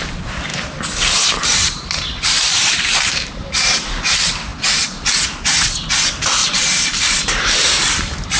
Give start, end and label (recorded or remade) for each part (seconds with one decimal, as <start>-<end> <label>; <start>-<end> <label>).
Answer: 0.0-0.5 recorded; 0.5-3.9 remade; 3.9-6.4 recorded; 6.4-8.4 remade